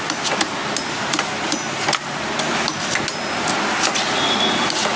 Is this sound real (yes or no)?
yes